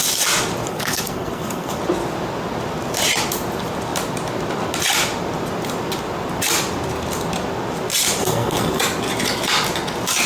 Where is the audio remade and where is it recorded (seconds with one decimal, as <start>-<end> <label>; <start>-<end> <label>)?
0.0-0.7 recorded; 0.7-1.8 remade; 1.8-8.2 recorded; 8.2-8.8 remade; 8.8-10.3 recorded